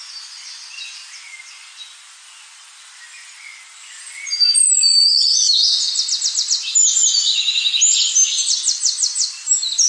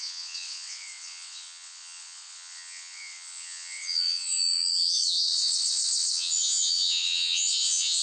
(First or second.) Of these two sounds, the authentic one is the first